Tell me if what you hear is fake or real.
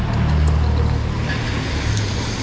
real